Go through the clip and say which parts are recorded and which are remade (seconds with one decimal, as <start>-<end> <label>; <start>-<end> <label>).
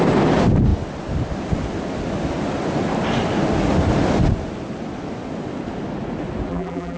0.0-6.5 recorded; 6.5-7.0 remade